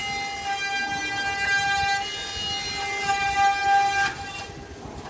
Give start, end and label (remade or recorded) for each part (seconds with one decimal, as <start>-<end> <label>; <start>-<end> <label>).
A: 0.0-5.1 recorded